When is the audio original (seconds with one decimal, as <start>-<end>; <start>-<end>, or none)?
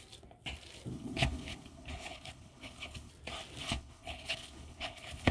0.0-0.9; 3.1-3.6